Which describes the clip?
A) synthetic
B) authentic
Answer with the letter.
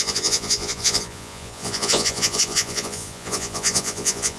A